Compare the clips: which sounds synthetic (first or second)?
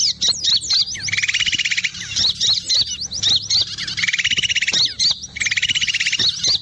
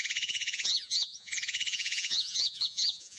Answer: second